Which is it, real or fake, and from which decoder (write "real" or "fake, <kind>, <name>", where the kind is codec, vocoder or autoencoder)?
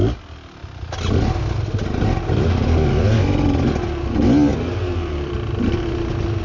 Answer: real